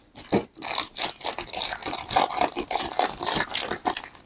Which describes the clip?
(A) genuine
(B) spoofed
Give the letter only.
A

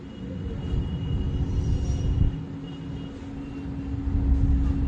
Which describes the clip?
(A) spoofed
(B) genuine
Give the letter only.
B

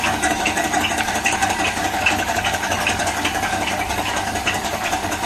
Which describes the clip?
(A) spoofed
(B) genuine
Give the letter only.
A